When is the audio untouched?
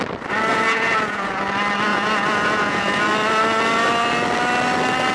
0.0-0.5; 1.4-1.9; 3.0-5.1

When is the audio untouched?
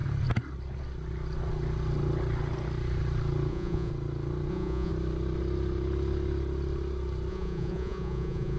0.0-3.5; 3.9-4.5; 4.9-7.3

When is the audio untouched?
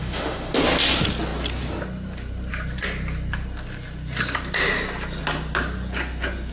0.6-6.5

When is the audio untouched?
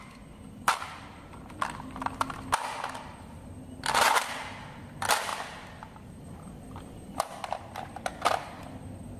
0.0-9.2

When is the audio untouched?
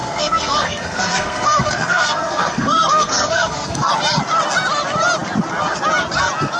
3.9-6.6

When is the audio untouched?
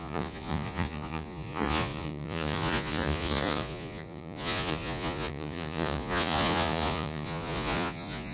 none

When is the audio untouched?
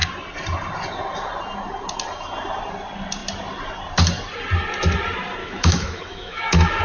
0.0-5.4